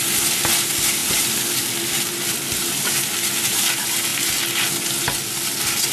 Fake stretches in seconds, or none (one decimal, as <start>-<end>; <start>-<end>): 1.0-2.9